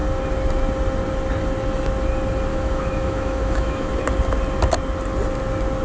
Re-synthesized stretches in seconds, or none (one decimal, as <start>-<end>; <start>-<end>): 2.5-3.9